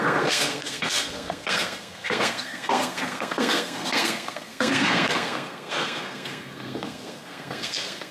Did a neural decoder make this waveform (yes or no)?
yes